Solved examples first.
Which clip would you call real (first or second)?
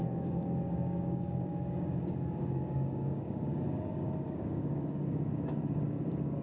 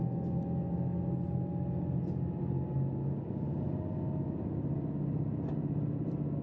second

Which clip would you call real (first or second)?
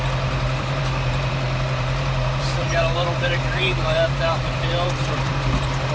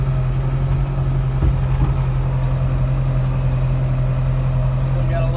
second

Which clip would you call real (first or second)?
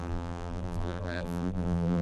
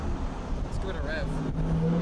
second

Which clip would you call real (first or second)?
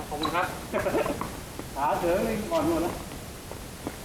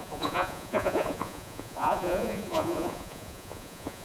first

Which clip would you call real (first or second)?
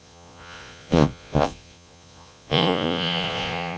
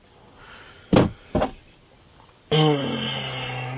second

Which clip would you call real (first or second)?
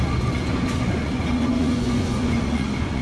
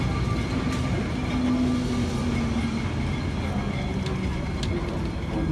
second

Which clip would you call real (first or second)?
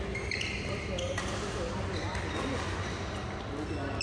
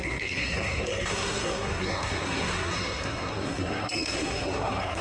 first